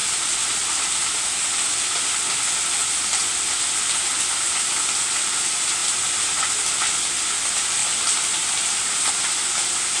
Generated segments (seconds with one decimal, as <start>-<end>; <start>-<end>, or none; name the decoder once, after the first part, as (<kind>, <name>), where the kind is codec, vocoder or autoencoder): 0.0-1.0 (vocoder, BigVGAN v2); 7.8-9.1

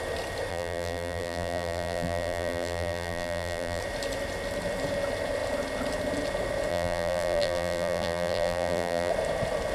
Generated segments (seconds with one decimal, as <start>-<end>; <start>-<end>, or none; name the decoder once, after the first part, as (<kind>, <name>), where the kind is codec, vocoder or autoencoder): 0.5-3.8 (vocoder, BigVGAN v2); 6.7-9.1

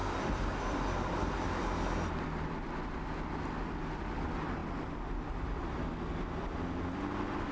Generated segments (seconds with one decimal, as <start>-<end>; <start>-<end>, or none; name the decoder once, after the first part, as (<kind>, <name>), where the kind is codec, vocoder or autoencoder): 0.0-0.6 (vocoder, BigVGAN v2)

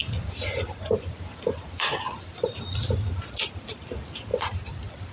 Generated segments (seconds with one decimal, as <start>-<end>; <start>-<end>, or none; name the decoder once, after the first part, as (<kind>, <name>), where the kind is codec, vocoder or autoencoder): 0.0-3.1 (vocoder, BigVGAN v2); 4.3-5.1

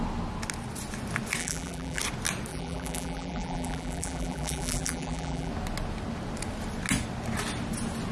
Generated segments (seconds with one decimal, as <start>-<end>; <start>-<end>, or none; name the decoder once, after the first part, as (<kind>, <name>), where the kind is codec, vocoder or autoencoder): 1.4-2.0 (vocoder, BigVGAN v2); 2.5-5.5

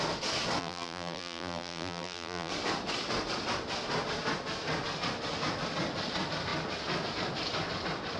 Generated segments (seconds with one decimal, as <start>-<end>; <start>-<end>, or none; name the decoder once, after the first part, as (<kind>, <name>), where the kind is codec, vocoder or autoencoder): 0.6-2.5 (vocoder, BigVGAN v2)

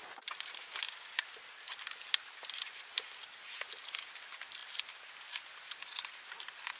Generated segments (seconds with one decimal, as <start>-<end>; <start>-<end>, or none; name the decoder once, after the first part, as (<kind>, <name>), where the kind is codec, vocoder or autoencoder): none

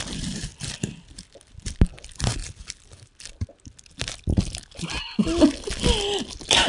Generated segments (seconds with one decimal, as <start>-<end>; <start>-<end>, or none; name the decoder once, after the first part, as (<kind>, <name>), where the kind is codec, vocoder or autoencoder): none